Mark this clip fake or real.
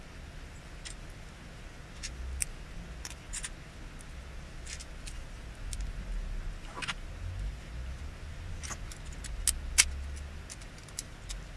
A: real